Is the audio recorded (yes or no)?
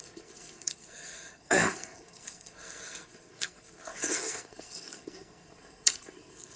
no